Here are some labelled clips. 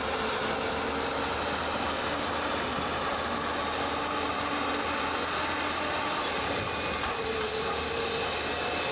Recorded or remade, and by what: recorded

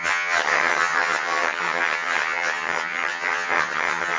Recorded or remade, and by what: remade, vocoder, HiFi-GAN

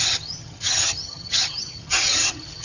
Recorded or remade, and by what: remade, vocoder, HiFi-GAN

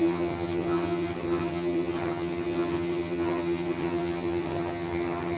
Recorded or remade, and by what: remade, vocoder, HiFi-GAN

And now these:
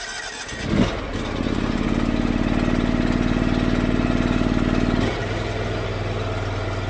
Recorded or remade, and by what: recorded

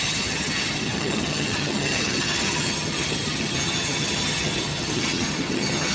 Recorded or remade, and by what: remade, vocoder, HiFi-GAN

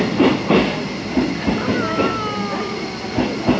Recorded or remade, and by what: recorded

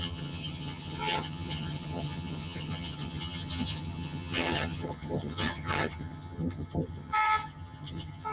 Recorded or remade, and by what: remade, vocoder, HiFi-GAN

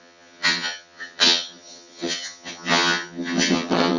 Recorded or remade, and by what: remade, vocoder, HiFi-GAN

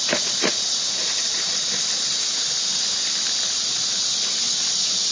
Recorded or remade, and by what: recorded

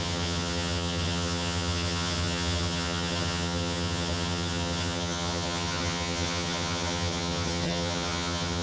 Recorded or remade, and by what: remade, vocoder, HiFi-GAN